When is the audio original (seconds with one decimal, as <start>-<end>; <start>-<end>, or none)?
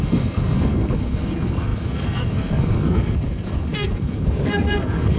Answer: none